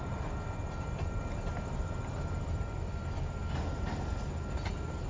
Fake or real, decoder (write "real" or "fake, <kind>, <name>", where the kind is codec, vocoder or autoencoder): real